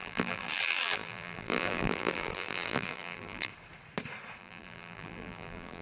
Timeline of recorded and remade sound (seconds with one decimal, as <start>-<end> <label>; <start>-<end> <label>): 0.0-3.5 remade; 3.5-4.4 recorded; 4.4-5.8 remade